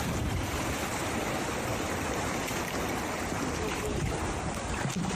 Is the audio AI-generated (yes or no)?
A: no